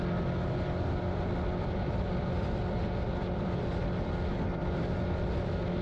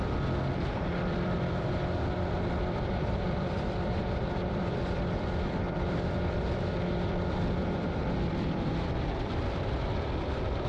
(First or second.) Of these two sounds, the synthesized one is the second